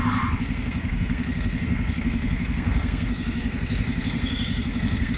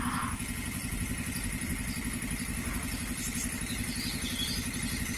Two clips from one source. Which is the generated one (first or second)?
first